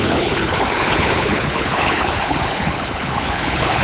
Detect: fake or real fake